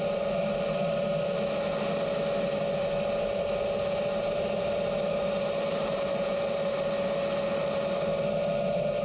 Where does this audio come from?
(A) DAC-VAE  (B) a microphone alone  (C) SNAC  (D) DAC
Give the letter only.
B